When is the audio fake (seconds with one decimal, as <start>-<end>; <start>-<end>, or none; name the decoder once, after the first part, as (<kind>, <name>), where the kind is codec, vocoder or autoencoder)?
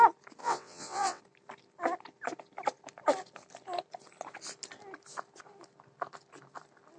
0.4-1.2 (vocoder, WaveNeXt)